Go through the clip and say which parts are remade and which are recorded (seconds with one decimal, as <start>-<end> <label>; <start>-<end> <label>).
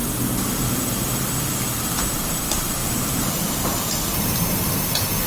0.0-2.8 recorded; 2.8-4.8 remade; 4.8-5.3 recorded